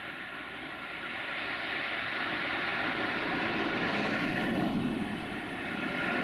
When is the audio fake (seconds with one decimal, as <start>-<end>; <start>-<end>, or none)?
5.1-5.7